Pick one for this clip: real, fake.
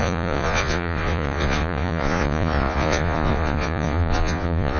fake